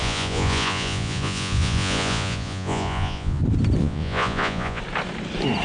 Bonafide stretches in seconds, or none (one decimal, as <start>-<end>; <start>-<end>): 3.4-3.8; 4.8-5.6